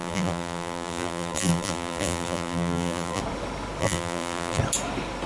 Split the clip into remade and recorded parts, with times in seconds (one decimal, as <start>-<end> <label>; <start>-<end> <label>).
0.0-3.2 remade; 3.2-3.8 recorded; 3.8-4.6 remade; 4.6-5.3 recorded